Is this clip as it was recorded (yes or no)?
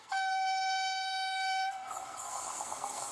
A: no